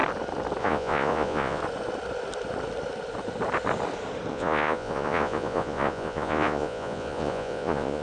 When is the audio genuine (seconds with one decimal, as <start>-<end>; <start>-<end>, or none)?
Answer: 0.0-0.6; 1.6-4.3